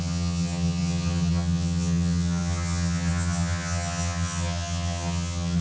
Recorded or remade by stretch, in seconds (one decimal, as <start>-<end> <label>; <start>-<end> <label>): 0.0-5.6 remade